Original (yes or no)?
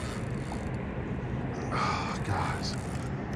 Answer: yes